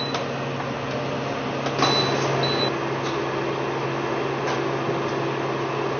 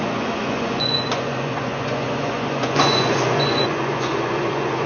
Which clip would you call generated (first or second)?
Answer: second